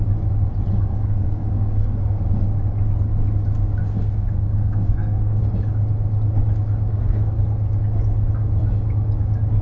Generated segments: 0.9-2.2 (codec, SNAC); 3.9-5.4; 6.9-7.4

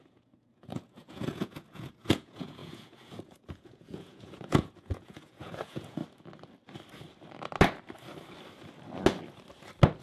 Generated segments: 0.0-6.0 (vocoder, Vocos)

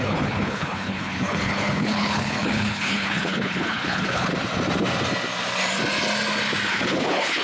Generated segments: 0.0-4.3 (codec, HILCodec); 6.7-7.4

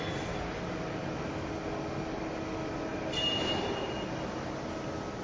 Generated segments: none